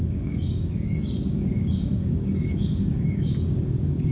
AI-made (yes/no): yes